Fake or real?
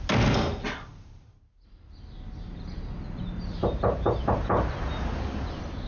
real